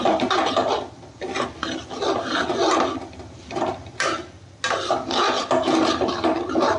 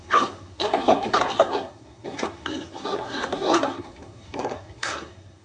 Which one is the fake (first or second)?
second